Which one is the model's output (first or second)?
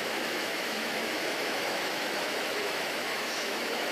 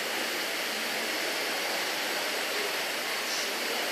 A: first